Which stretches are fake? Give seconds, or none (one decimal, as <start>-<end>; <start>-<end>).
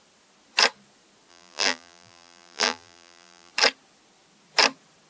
1.3-3.5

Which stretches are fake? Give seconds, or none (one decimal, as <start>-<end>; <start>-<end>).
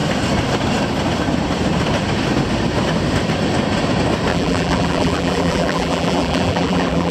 4.3-7.1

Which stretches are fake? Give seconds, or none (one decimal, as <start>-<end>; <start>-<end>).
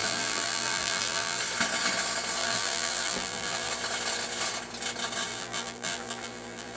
0.0-1.4; 2.4-3.7; 5.3-6.8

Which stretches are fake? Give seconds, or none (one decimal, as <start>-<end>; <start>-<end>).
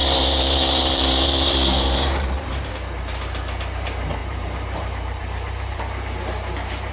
0.0-2.7; 4.2-5.8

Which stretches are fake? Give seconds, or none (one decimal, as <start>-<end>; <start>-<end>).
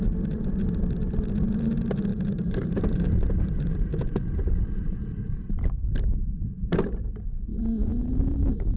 2.1-5.7; 6.2-7.0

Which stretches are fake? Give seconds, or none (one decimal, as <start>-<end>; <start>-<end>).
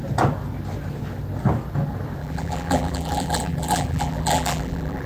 2.2-5.1